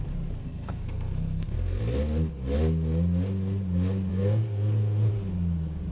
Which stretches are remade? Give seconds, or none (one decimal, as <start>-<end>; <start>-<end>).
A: 0.4-1.8; 4.1-5.1